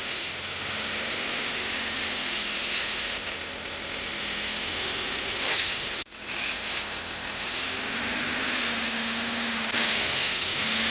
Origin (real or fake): fake